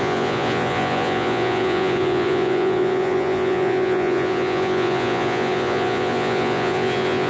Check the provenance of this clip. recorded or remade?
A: remade